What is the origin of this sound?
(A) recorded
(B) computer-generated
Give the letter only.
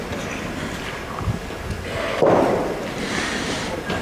A